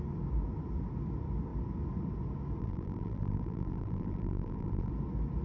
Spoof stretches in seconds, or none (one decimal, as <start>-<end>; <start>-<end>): 2.6-4.9